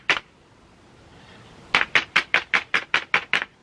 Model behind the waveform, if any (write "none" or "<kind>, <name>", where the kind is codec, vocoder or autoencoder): none